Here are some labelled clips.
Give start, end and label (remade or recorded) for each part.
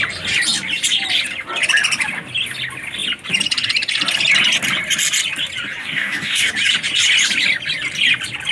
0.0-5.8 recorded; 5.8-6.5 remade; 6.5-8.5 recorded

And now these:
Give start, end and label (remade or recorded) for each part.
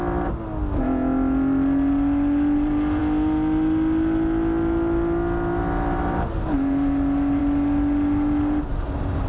0.0-9.3 recorded